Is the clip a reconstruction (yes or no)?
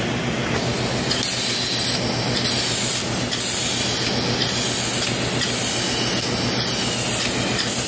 no